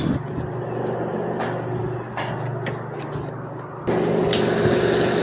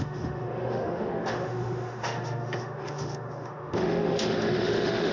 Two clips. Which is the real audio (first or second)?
first